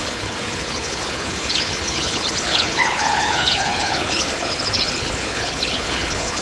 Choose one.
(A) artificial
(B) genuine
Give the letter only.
A